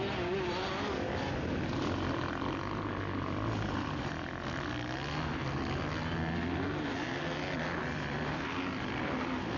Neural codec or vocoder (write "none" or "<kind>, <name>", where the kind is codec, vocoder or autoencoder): none